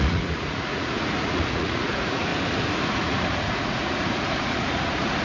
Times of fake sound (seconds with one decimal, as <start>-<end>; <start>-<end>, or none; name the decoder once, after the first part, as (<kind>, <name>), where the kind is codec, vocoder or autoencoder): 0.0-2.3 (vocoder, Vocos); 2.9-5.2